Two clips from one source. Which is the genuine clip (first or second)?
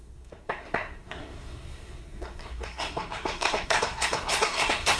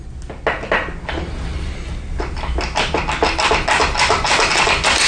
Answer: second